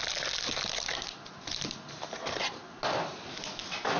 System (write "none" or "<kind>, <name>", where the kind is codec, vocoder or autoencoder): none